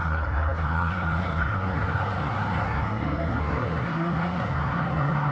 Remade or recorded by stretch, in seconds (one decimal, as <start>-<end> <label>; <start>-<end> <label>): 0.0-5.3 remade